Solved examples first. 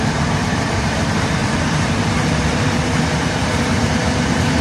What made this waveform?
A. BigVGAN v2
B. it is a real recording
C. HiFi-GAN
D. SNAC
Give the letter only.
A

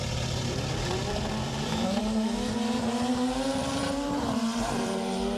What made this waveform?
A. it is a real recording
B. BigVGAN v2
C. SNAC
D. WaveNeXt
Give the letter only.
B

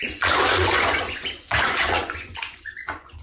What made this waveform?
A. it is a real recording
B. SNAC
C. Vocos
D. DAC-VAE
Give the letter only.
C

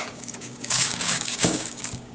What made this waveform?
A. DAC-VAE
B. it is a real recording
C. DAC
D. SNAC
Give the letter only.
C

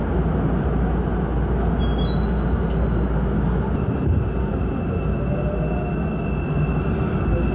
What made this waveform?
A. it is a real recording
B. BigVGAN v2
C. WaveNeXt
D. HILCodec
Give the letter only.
A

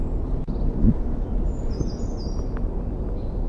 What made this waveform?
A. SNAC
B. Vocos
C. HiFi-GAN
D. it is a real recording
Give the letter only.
D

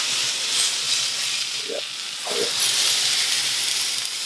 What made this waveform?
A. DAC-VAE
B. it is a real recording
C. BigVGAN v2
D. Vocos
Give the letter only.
B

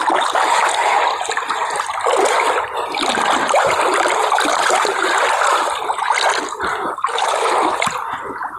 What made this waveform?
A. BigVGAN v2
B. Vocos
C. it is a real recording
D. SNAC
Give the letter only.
C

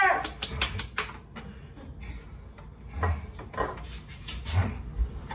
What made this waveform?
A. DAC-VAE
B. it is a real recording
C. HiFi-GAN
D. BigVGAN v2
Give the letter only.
B